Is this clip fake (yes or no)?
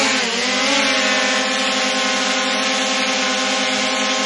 no